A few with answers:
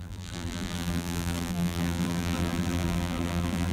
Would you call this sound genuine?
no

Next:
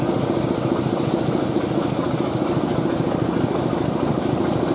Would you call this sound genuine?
yes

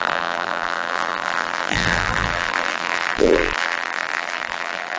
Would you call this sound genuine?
no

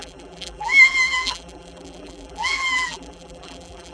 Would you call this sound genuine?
no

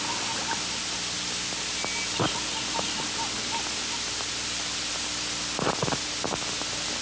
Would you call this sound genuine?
yes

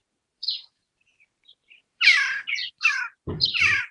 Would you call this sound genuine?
no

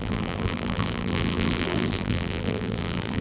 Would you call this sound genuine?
no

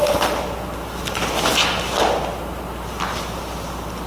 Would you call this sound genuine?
yes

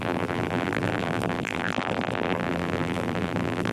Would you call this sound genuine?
no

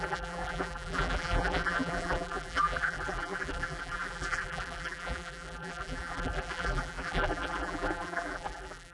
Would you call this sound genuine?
no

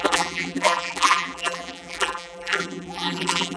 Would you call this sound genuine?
no